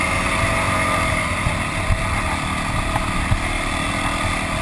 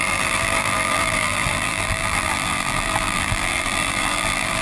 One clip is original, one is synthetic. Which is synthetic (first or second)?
second